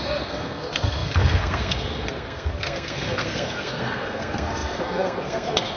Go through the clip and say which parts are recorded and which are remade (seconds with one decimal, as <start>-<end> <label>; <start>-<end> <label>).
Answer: 0.0-5.8 remade